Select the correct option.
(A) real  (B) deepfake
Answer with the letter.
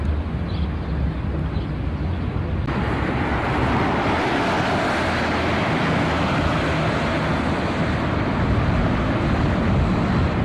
A